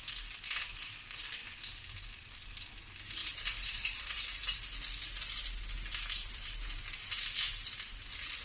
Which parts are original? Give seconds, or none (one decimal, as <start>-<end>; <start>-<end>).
0.0-3.2; 4.2-6.2; 7.4-8.4